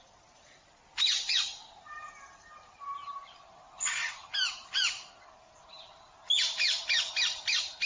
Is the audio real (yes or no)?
yes